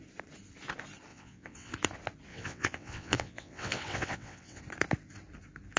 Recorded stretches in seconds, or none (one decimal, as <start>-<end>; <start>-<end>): 0.0-1.1; 1.7-2.3; 4.6-5.8